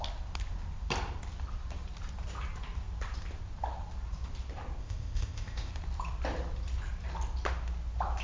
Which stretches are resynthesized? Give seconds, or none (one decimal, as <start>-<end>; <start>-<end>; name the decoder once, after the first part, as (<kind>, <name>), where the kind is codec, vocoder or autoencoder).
4.8-5.7 (codec, ZipCodec)